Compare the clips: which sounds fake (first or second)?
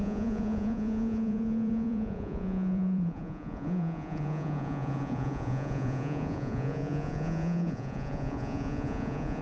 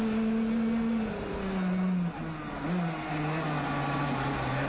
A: first